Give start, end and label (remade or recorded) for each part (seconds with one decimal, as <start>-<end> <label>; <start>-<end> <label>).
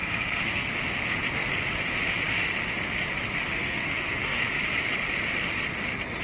0.0-0.7 remade; 0.7-3.5 recorded; 3.5-4.4 remade; 4.4-6.2 recorded